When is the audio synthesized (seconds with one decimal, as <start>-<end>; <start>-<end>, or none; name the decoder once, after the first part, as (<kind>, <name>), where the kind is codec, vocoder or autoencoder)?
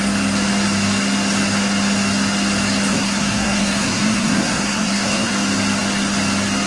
2.9-5.3 (codec, SNAC)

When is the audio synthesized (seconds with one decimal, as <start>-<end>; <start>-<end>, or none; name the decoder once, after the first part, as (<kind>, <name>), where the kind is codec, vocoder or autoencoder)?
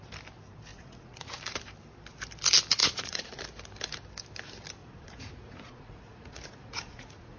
0.7-1.4 (vocoder, Vocos); 2.8-3.4; 4.8-7.4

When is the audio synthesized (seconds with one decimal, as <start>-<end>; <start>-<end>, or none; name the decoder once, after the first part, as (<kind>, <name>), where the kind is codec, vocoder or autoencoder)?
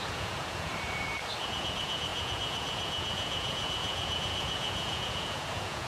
0.0-0.7 (vocoder, Vocos); 1.4-5.9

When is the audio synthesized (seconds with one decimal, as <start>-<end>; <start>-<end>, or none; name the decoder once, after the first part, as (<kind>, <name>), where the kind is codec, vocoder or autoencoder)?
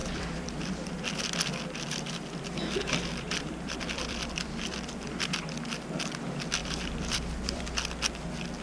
0.0-5.2 (vocoder, BigVGAN v2); 6.6-7.6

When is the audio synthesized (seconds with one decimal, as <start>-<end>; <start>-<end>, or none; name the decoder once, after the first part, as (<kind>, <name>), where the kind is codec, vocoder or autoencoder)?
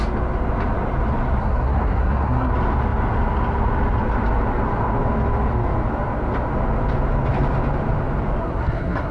1.4-2.5 (codec, SNAC); 8.4-9.1